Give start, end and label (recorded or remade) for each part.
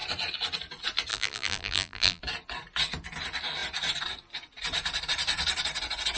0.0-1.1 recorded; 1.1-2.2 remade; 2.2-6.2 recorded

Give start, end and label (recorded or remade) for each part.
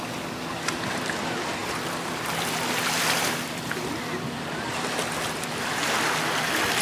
0.0-1.6 recorded; 1.6-5.7 remade; 5.7-6.8 recorded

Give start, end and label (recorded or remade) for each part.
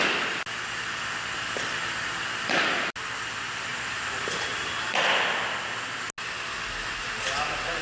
0.0-3.7 recorded; 3.7-4.9 remade; 4.9-7.8 recorded